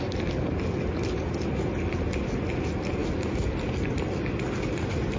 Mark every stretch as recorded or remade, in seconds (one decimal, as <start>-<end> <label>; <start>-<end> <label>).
0.0-5.2 recorded